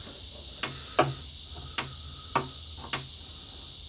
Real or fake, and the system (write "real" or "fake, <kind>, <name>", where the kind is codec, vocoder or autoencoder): real